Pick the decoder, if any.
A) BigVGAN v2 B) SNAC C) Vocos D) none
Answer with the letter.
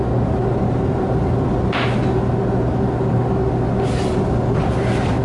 D